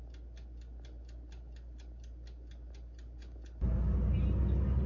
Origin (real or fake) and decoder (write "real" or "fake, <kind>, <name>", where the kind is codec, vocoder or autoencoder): real